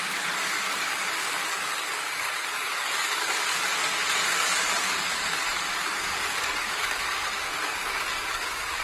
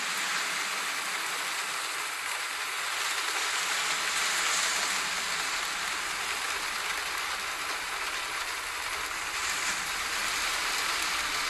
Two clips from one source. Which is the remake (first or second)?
first